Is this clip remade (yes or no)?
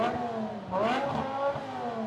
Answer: no